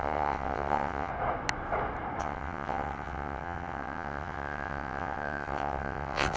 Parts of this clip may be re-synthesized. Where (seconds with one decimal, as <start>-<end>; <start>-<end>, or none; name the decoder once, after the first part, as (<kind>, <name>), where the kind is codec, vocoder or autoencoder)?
0.0-1.1 (vocoder, WaveNeXt); 2.2-6.4